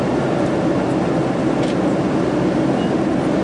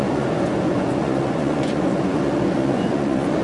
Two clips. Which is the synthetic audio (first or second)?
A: second